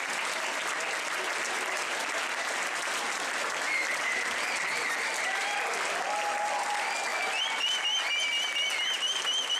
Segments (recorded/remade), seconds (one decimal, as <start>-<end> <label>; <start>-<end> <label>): 0.0-9.6 recorded